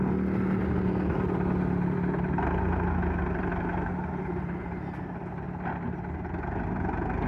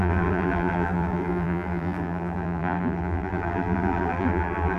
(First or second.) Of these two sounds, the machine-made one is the second